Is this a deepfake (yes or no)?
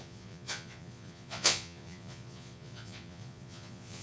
yes